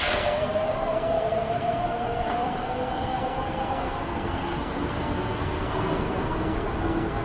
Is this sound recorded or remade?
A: remade